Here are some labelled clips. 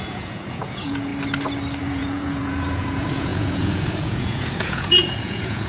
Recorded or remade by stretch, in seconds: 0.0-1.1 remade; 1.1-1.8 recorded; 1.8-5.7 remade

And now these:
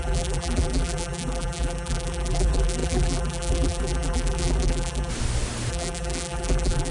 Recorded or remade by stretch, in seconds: 0.0-5.1 remade; 5.1-5.7 recorded; 5.7-6.9 remade

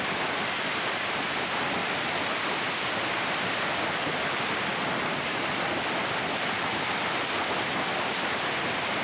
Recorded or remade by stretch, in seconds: 0.0-1.8 remade; 1.8-2.5 recorded; 2.5-9.0 remade

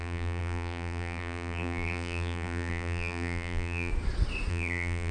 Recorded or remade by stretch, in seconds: 0.0-3.9 remade; 3.9-4.5 recorded; 4.5-5.1 remade

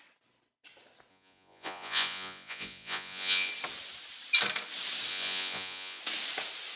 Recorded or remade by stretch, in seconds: 0.0-1.1 recorded; 1.1-3.5 remade; 3.5-5.1 recorded; 5.1-6.0 remade; 6.0-6.8 recorded

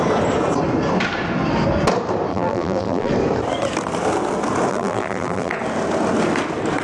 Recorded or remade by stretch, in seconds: 0.0-2.3 recorded; 2.3-3.1 remade; 3.1-4.7 recorded; 4.7-5.5 remade; 5.5-6.8 recorded

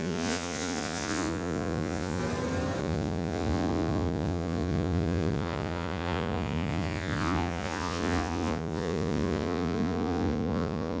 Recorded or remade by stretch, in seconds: 0.0-2.2 remade; 2.2-2.8 recorded; 2.8-11.0 remade

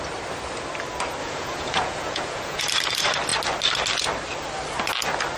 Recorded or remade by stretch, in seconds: 0.0-1.2 recorded; 1.2-2.6 remade; 2.6-5.4 recorded